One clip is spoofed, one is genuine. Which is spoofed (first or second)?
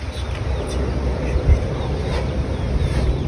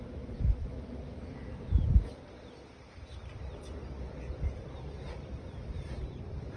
second